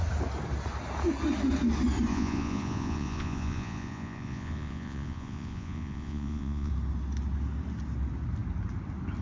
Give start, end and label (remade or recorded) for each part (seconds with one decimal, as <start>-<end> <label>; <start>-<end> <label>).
0.0-2.1 recorded; 2.1-6.7 remade; 6.7-9.2 recorded